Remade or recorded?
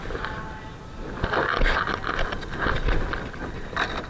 recorded